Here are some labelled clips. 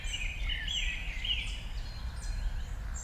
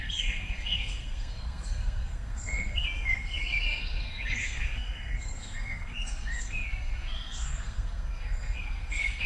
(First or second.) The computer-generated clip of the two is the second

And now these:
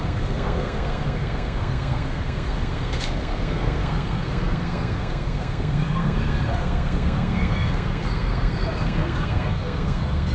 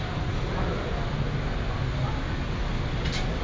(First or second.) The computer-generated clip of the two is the first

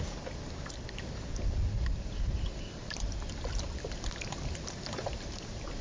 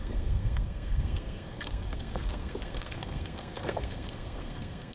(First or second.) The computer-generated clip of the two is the second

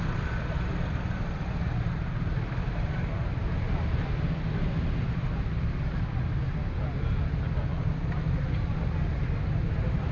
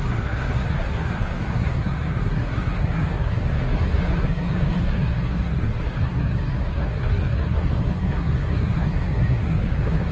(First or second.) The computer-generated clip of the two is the second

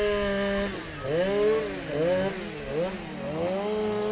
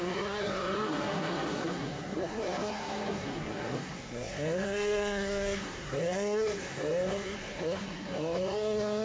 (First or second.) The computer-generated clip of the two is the second